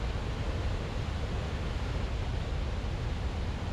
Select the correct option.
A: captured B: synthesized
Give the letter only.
A